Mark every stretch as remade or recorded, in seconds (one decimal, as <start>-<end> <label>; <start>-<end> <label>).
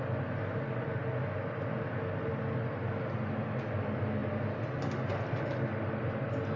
0.0-6.6 recorded